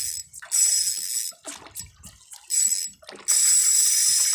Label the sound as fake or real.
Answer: real